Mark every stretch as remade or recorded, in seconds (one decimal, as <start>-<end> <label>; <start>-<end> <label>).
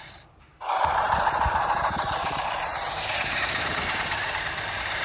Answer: 0.0-5.0 remade